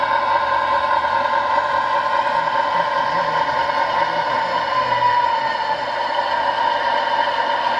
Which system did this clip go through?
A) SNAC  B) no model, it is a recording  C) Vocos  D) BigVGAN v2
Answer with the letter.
B